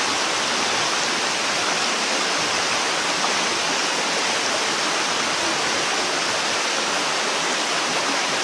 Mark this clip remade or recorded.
recorded